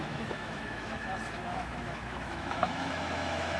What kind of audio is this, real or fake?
fake